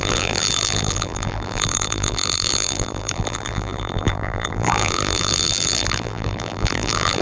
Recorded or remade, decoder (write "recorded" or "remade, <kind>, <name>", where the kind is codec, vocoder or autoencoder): remade, vocoder, BigVGAN v2